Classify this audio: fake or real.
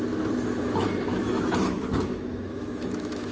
fake